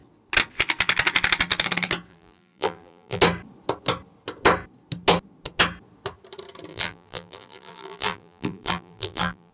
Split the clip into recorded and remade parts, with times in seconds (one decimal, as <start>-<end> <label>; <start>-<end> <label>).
0.0-2.1 recorded; 2.1-3.2 remade; 3.2-6.7 recorded; 6.7-9.5 remade